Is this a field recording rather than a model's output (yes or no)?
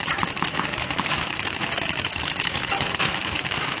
no